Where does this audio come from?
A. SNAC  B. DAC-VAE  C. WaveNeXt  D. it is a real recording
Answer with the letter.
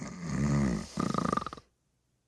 D